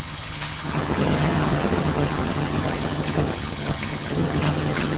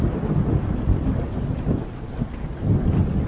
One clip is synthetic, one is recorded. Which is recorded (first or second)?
second